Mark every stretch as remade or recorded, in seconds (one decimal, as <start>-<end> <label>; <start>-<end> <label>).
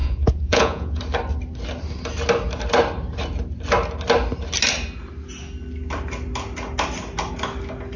0.0-1.0 remade; 1.0-8.0 recorded